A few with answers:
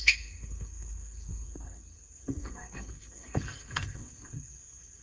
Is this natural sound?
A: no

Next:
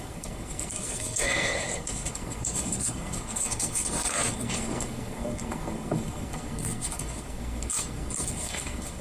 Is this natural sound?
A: no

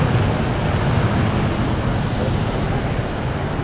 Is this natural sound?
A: yes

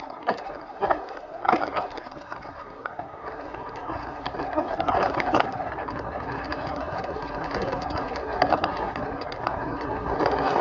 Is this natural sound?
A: no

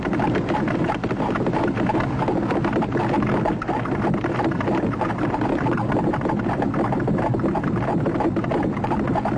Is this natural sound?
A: yes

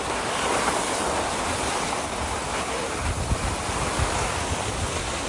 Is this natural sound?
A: yes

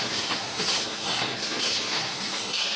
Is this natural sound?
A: no